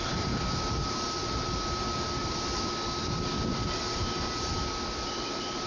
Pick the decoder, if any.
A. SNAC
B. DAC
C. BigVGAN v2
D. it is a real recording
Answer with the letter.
D